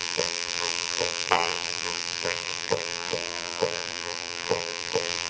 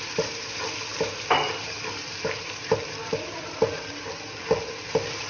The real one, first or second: second